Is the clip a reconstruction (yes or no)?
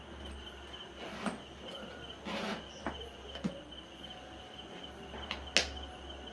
no